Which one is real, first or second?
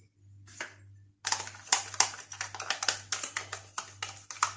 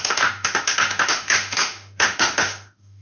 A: first